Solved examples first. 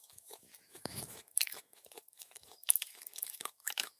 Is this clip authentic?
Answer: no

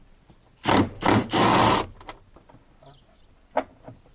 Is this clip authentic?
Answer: yes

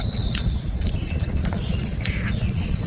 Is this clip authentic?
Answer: no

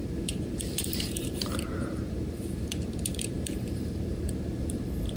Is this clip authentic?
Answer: no